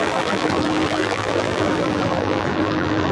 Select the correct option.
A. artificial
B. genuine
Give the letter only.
A